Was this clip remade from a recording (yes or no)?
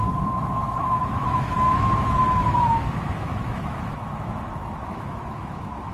yes